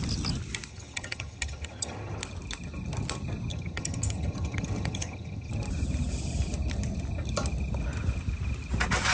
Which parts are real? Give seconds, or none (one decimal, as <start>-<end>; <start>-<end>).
0.0-0.7; 2.2-3.5; 5.5-9.1